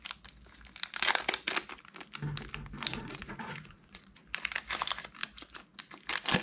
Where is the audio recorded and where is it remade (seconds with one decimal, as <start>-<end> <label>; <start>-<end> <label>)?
0.0-2.9 recorded; 2.9-4.2 remade; 4.2-6.4 recorded